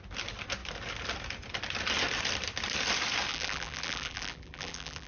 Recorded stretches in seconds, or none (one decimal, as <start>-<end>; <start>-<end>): 0.0-3.3